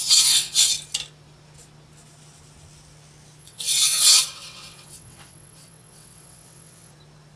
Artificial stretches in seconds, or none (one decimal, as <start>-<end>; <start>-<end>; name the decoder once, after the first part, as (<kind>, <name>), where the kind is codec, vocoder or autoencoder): 0.0-0.7 (vocoder, WaveNeXt); 3.4-6.9